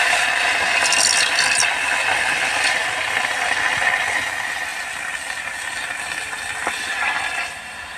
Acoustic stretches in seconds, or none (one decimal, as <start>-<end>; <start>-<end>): 0.0-8.0